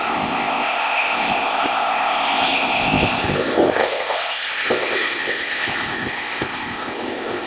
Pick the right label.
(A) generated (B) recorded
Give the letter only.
A